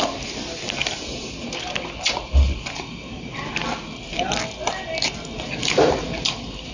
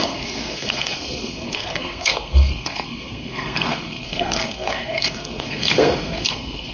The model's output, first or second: second